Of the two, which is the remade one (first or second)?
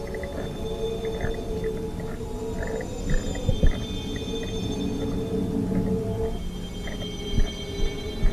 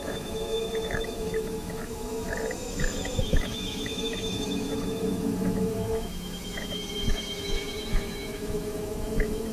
second